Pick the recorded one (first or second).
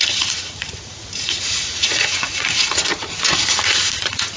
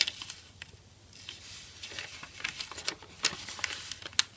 second